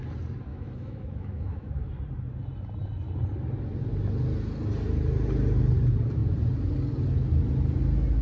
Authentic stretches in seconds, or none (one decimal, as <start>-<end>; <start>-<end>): 0.0-0.5; 1.9-8.2